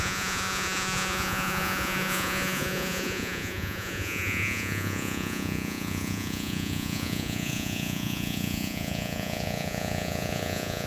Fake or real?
fake